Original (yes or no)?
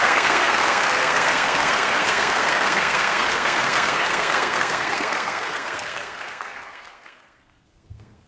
no